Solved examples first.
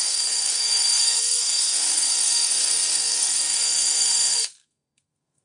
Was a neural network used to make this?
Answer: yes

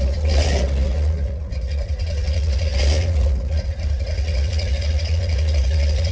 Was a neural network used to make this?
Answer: yes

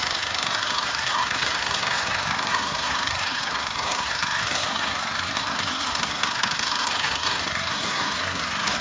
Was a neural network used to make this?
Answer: yes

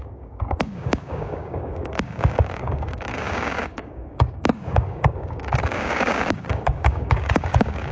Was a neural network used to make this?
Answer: yes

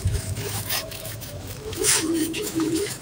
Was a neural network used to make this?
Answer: yes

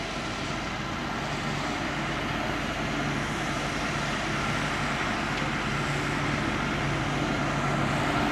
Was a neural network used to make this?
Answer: no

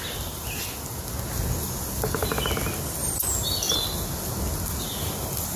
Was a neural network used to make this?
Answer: no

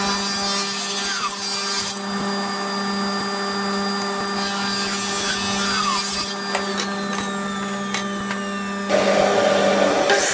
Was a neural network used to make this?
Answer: no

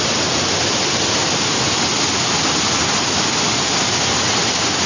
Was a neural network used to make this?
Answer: no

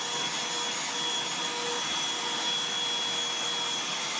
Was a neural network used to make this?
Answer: no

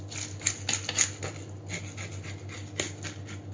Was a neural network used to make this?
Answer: no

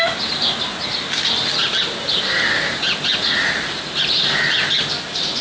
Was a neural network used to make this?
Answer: no